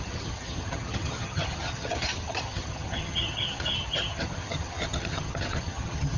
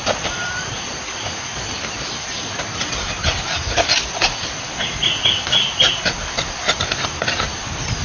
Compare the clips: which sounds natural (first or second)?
second